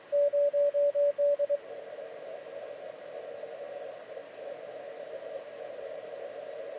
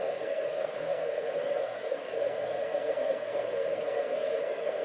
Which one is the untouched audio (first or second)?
first